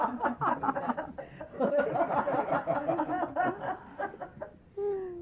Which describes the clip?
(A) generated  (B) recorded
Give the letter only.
B